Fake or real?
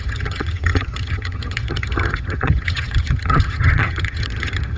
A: fake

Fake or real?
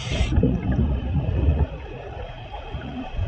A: fake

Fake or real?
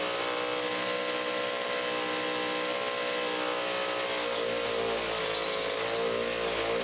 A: real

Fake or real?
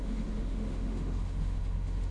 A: fake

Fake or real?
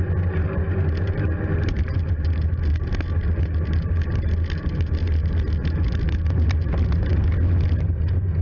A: real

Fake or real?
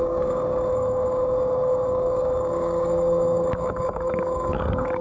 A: fake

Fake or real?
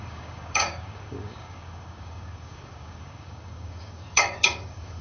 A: fake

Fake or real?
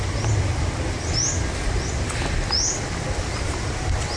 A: real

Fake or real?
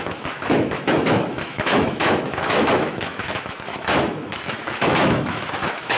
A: fake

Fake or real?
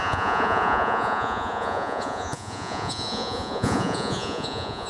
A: fake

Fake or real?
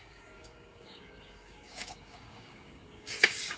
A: fake